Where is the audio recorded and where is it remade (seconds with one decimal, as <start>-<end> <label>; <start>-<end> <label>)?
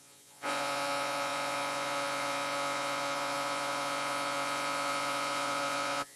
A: 0.0-6.2 remade